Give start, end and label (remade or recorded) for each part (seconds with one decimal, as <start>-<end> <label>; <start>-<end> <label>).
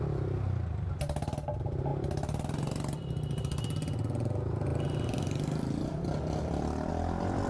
0.0-7.5 recorded